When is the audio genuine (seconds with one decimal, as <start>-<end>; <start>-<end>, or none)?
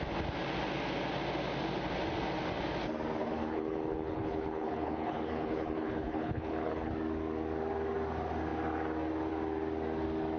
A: 0.0-3.2; 6.9-10.4